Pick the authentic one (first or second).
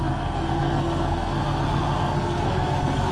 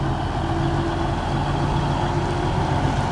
second